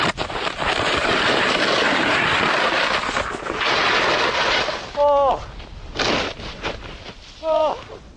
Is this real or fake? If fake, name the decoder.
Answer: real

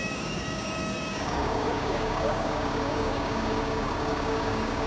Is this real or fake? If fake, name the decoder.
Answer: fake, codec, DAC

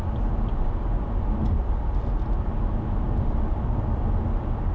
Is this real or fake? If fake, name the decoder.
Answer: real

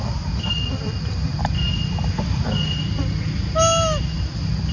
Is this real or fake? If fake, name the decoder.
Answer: real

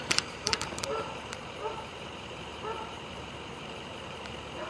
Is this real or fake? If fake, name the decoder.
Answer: fake, vocoder, BigVGAN v2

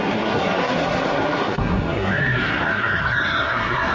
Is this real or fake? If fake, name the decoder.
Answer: fake, codec, SNAC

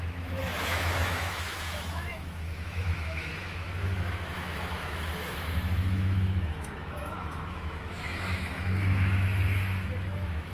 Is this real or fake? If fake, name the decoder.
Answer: fake, autoencoder, DAC-VAE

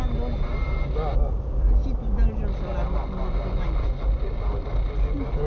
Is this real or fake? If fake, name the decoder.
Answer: real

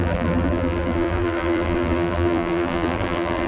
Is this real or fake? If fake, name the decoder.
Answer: fake, vocoder, BigVGAN v2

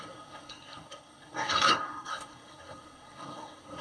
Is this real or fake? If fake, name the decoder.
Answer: fake, codec, SNAC